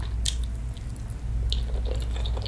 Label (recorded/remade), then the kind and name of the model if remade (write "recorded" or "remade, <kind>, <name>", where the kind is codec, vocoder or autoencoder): recorded